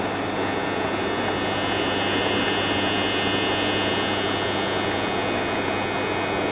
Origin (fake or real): real